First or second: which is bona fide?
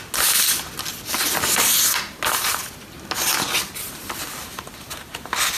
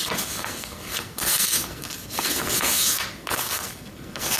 first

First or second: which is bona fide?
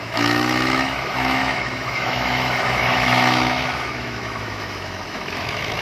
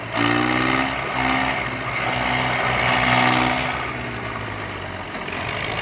second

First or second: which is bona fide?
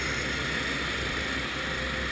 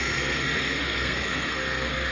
first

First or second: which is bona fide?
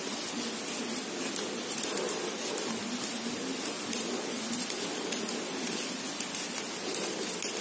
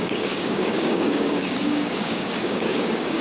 first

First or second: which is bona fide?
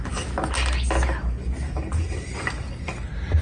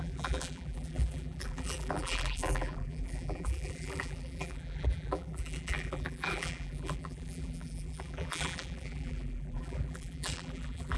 first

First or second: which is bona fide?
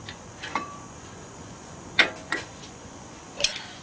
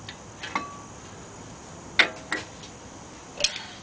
second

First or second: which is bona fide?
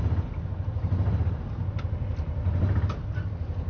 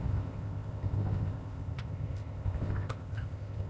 first